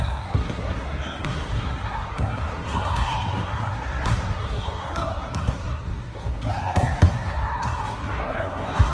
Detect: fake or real fake